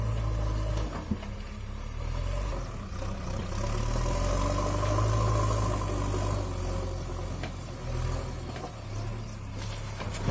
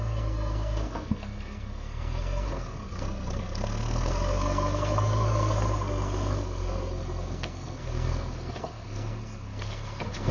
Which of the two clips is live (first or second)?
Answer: first